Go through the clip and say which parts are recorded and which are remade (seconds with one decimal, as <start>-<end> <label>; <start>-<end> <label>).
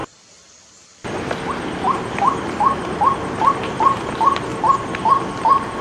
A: 0.0-5.8 recorded